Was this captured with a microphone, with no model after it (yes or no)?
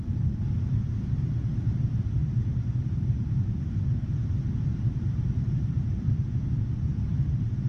no